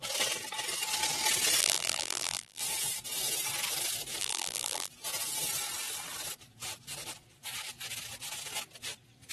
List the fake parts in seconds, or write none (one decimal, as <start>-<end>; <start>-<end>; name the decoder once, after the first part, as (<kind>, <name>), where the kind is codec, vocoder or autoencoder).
1.6-2.6 (vocoder, BigVGAN v2); 4.2-4.9